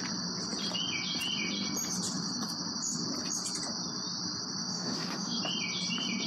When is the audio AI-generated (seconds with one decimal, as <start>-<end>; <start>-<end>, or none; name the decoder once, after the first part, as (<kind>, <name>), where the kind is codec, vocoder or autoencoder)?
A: 4.6-5.4 (autoencoder, DAC-VAE)

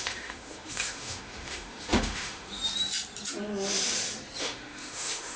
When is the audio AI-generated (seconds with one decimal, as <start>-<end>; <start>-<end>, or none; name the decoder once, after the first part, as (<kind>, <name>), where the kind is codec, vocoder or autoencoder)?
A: 0.0-2.6 (autoencoder, DAC-VAE); 4.4-5.4